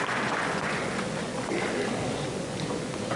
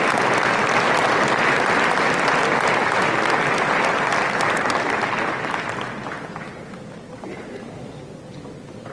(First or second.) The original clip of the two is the second